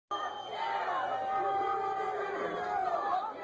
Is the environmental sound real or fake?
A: real